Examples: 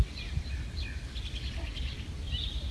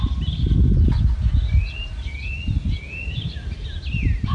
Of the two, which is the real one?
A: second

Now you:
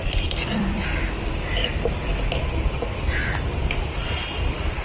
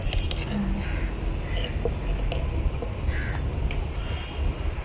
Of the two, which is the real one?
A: second